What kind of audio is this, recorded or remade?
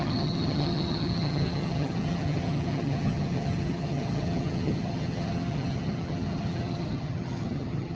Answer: remade